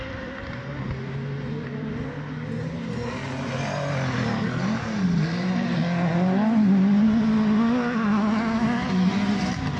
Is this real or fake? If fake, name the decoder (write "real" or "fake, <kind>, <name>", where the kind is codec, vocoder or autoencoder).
real